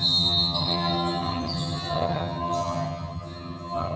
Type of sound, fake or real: fake